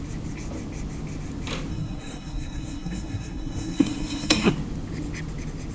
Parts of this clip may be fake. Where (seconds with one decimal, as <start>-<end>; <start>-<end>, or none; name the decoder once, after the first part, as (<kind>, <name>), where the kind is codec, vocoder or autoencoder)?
1.7-4.5 (codec, SNAC)